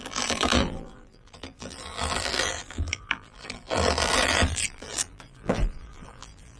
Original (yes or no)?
no